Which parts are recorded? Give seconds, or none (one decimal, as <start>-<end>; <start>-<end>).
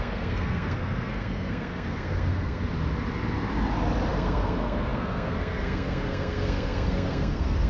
2.6-4.1